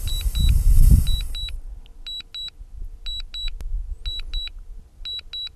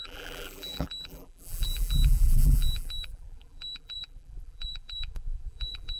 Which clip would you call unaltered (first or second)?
first